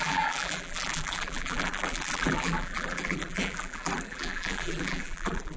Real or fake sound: fake